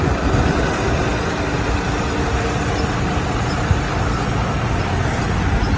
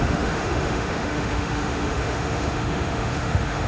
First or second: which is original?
first